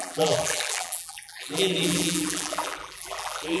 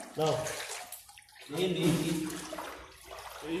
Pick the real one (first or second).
second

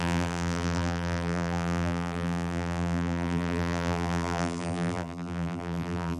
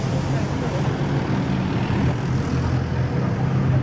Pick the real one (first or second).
second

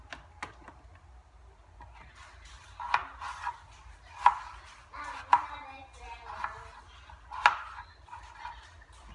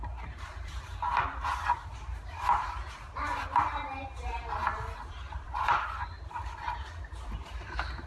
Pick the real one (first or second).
first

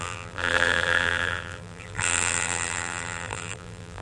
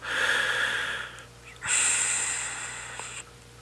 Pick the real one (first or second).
second